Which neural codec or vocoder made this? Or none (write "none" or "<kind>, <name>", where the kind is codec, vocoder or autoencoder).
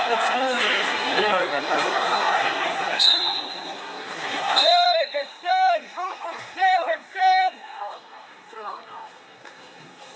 codec, SNAC